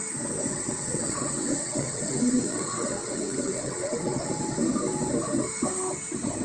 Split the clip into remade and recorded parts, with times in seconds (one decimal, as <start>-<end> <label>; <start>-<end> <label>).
0.0-0.5 recorded; 0.5-4.3 remade; 4.3-6.4 recorded